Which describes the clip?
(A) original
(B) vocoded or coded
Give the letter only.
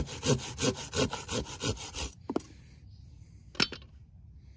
A